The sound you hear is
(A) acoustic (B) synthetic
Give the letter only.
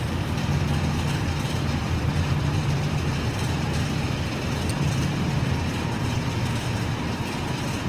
B